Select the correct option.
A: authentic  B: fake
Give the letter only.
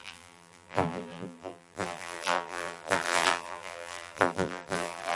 B